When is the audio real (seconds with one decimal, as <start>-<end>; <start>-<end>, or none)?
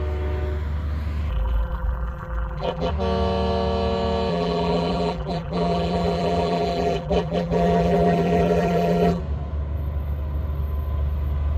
0.0-1.3; 2.9-4.3; 9.2-11.6